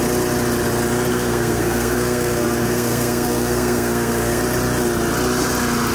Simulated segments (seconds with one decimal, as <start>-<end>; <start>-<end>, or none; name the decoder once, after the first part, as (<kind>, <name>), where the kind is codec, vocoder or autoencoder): 1.1-4.4 (codec, SNAC)